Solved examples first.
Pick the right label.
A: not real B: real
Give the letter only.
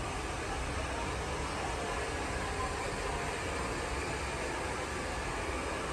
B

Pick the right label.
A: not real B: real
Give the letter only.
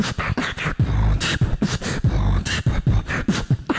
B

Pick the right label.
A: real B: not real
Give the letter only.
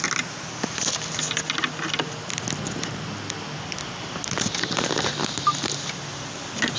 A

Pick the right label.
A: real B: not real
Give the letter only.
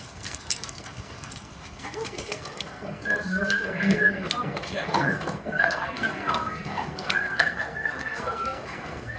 B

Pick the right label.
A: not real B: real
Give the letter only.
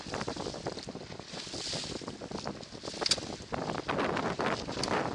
B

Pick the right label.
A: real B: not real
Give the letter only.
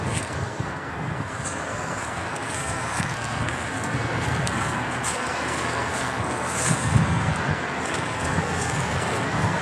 B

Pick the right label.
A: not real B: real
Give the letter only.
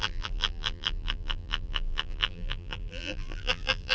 A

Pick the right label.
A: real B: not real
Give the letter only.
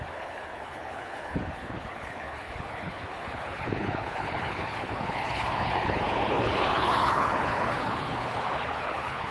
B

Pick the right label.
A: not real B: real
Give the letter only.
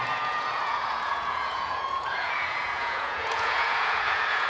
A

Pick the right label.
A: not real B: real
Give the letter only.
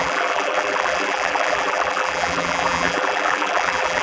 A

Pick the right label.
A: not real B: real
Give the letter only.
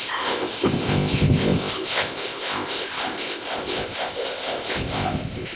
A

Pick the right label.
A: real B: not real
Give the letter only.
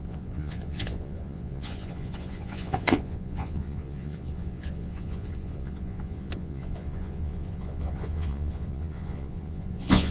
B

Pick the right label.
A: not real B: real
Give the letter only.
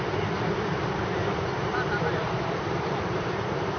A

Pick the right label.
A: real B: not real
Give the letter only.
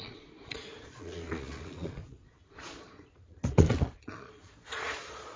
B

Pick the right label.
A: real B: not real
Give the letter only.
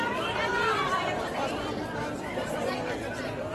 B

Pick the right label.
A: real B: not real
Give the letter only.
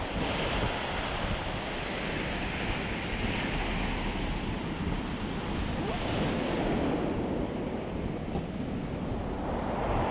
A